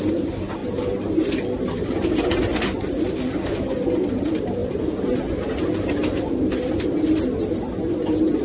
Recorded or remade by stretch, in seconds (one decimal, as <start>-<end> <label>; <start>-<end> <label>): 0.0-8.4 recorded